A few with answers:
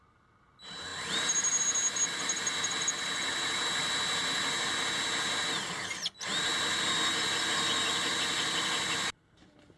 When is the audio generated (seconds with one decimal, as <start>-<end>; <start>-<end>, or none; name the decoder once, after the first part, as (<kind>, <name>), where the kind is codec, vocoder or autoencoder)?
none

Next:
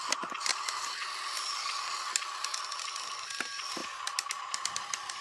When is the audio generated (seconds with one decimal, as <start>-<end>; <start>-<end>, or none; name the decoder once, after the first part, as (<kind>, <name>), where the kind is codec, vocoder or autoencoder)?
none

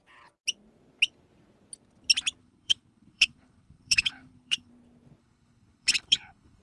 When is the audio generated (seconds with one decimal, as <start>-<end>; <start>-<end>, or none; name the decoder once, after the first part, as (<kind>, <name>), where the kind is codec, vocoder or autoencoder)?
2.4-4.7 (codec, HILCodec); 5.2-6.6

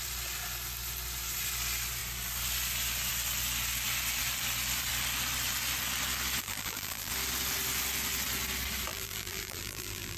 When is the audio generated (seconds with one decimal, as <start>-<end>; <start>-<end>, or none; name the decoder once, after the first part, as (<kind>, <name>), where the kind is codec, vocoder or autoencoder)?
6.4-7.1 (vocoder, BigVGAN v2); 8.9-10.2